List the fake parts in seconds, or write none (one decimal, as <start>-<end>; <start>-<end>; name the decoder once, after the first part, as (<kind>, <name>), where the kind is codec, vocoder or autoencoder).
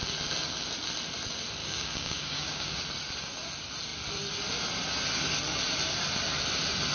1.6-2.8 (codec, DAC)